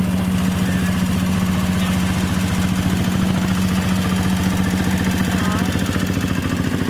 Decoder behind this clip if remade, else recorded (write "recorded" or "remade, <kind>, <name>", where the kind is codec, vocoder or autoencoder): recorded